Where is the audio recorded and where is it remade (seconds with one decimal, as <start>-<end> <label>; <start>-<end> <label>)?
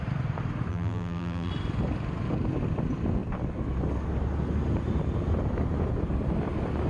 0.0-0.7 recorded; 0.7-1.5 remade; 1.5-6.9 recorded